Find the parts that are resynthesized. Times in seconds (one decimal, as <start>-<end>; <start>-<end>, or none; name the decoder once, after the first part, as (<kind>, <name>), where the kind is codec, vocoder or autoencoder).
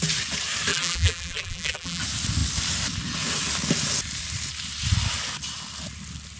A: 0.7-2.0 (vocoder, BigVGAN v2)